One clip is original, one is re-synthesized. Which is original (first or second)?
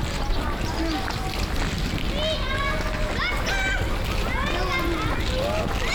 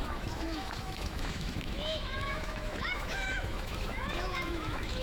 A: first